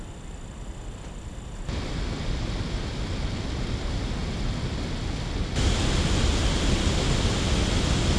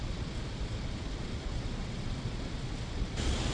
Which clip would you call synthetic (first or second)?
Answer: second